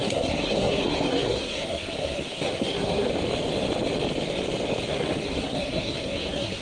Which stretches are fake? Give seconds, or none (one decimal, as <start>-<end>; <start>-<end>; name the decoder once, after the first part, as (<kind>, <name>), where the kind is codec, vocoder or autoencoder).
0.0-3.1 (codec, SNAC); 4.9-6.6